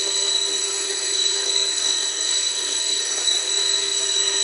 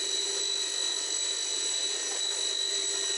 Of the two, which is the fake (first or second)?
first